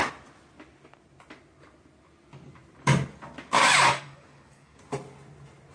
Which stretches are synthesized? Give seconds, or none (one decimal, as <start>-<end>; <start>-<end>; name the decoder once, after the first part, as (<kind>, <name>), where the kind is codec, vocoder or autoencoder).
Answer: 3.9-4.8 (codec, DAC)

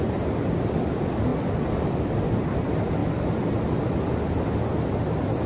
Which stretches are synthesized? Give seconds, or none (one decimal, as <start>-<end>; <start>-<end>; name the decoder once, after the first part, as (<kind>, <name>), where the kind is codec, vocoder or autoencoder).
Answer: none

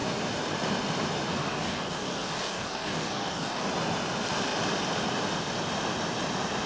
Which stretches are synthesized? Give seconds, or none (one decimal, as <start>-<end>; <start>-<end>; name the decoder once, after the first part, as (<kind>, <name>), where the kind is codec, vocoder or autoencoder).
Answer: 1.3-3.7 (codec, DAC)